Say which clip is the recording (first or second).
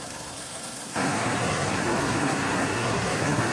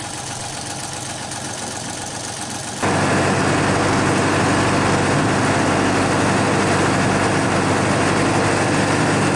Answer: second